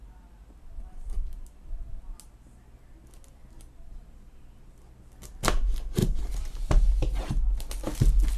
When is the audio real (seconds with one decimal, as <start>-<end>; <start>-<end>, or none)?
0.0-6.0; 6.9-8.4